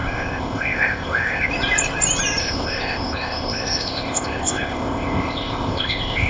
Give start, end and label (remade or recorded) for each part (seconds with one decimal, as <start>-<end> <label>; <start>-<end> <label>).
0.0-1.5 remade; 1.5-2.4 recorded; 2.4-6.3 remade